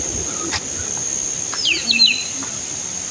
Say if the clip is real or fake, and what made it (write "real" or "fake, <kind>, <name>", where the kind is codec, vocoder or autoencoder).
real